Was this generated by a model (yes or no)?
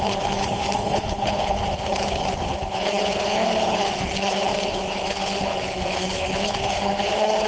yes